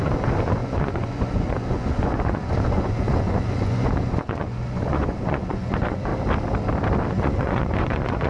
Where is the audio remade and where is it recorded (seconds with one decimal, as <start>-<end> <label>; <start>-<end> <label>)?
0.0-6.1 remade; 6.1-7.1 recorded; 7.1-8.3 remade